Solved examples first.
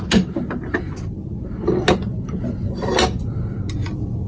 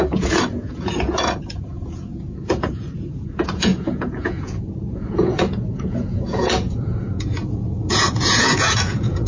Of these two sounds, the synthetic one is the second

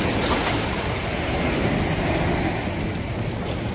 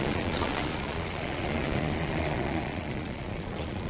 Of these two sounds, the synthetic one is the second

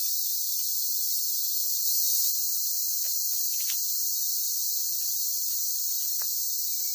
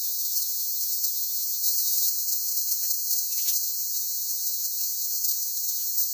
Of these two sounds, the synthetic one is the second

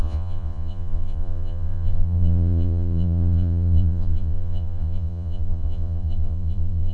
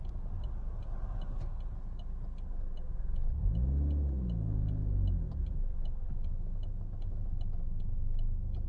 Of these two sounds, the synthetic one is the first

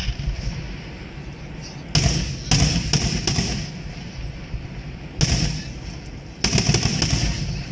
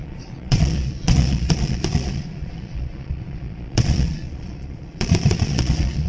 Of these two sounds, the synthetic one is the second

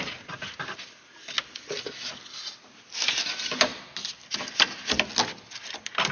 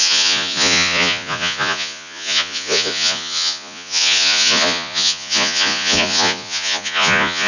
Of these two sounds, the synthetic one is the second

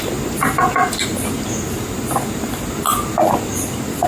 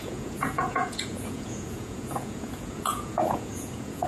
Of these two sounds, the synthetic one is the second